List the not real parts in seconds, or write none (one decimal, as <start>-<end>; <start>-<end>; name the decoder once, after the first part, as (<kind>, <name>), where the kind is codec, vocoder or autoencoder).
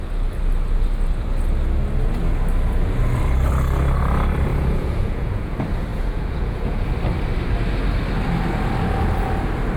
4.5-5.5 (vocoder, Vocos); 5.9-6.9